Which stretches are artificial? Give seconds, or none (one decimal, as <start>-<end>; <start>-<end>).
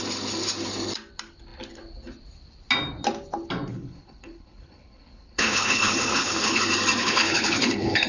3.7-6.6; 7.0-8.1